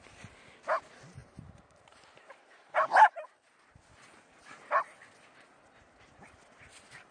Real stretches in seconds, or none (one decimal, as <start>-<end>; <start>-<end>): 0.0-1.2; 3.5-4.5; 5.1-7.1